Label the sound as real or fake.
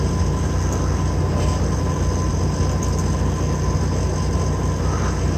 real